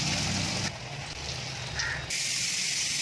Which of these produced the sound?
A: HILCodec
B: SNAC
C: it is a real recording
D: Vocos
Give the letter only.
C